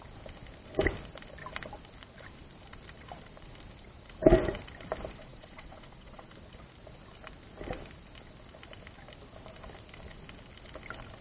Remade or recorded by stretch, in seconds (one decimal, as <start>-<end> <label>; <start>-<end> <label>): 0.0-5.2 recorded; 5.2-6.3 remade; 6.3-11.2 recorded